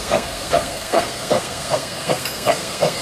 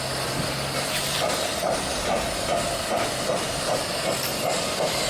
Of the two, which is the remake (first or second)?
first